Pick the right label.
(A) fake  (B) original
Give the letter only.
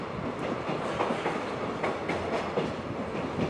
B